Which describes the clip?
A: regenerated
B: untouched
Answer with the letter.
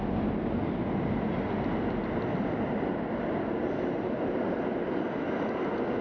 B